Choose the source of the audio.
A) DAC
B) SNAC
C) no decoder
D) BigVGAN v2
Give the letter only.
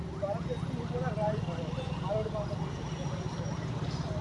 C